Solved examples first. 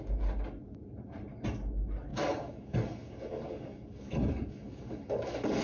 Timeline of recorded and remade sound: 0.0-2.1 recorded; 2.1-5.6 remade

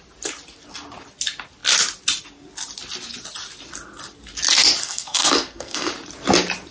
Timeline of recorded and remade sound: 0.0-4.8 recorded; 4.8-5.9 remade; 5.9-6.7 recorded

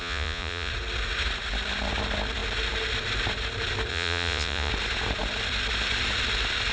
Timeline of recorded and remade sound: 0.0-0.7 remade; 0.7-3.9 recorded; 3.9-4.7 remade; 4.7-6.7 recorded